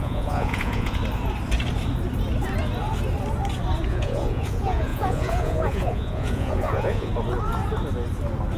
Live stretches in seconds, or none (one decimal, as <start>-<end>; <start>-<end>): 1.0-3.9; 7.1-8.6